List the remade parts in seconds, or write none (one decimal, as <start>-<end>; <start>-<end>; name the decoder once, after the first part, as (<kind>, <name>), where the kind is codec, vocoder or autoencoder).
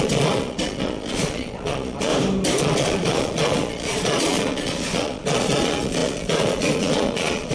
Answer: 0.0-2.1 (vocoder, Vocos); 2.6-7.5